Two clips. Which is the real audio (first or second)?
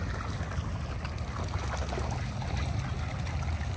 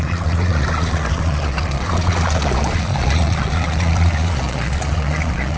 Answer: first